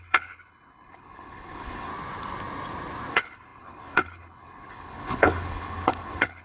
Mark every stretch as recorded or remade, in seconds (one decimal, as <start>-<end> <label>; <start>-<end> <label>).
0.0-1.9 remade; 1.9-3.1 recorded; 3.1-6.4 remade